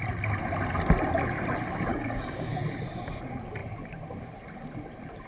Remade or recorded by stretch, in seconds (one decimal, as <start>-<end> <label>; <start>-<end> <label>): 0.0-1.9 recorded; 1.9-2.5 remade; 2.5-5.3 recorded